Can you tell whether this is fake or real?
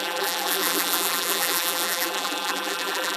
fake